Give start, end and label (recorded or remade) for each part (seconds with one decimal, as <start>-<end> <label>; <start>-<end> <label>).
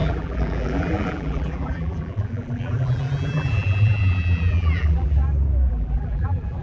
0.0-5.2 remade; 5.2-5.7 recorded; 5.7-6.6 remade